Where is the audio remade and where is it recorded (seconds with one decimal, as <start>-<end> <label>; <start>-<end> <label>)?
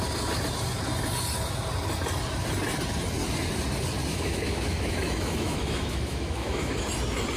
0.0-4.1 recorded; 4.1-6.8 remade; 6.8-7.4 recorded